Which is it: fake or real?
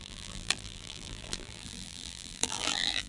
fake